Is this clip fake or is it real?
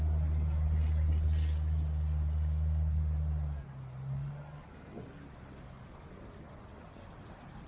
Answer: real